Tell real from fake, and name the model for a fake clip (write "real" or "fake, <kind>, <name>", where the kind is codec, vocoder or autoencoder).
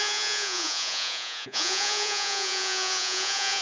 fake, vocoder, Vocos